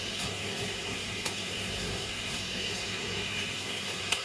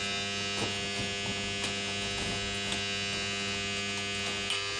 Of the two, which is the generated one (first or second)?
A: first